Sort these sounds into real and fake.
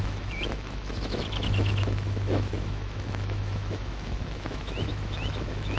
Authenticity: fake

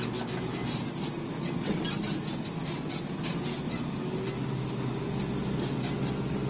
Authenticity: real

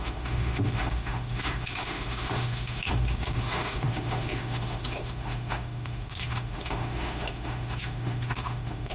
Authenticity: fake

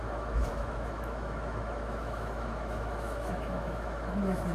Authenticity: fake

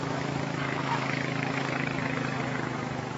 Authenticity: fake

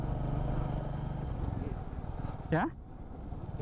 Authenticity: real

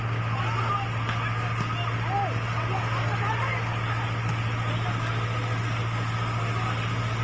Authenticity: real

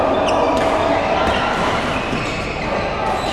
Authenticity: real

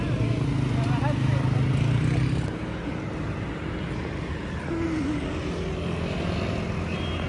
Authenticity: real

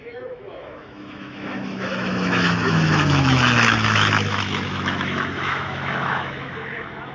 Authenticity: fake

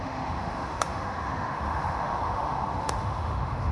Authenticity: fake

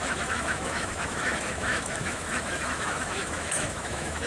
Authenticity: fake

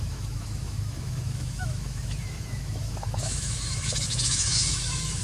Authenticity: fake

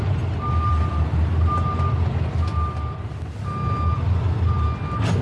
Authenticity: real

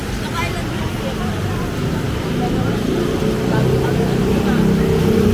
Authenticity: real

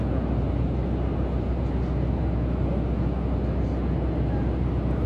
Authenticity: real